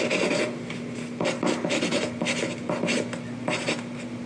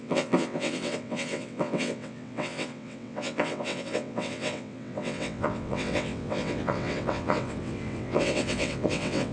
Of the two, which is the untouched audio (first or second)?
first